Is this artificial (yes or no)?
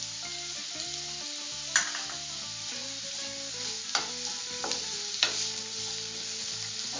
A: no